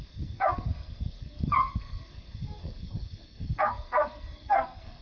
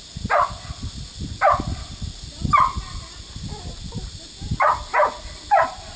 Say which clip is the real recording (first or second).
second